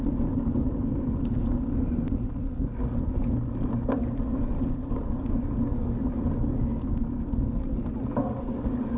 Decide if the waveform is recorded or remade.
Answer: recorded